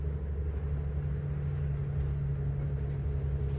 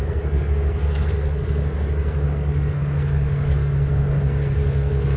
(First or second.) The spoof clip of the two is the second